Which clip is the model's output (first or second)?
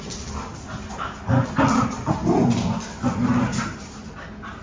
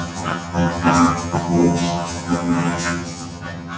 second